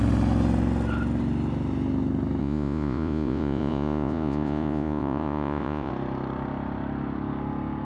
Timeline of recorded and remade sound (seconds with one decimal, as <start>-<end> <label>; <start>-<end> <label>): 0.0-2.4 recorded; 2.4-5.9 remade; 5.9-7.8 recorded